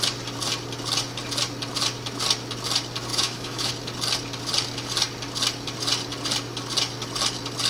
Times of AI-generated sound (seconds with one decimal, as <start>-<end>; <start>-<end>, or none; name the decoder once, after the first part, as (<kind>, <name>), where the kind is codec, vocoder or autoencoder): 3.1-3.7 (autoencoder, DAC-VAE)